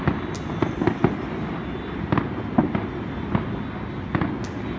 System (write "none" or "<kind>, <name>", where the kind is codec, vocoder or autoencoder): none